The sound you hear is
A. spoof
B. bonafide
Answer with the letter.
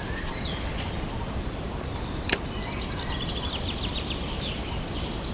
A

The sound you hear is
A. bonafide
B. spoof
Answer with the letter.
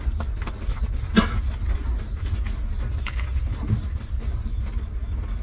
A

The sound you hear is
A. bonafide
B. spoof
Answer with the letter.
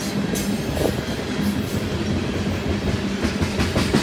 A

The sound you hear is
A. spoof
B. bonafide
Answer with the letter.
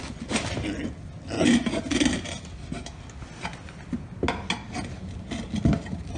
B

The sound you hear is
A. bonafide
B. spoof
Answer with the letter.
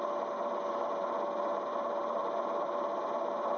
B